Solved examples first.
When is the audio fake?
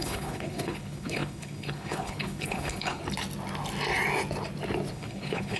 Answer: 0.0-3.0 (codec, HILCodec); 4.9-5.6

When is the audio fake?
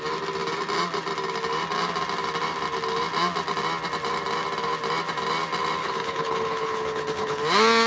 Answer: 5.8-7.4 (codec, HILCodec)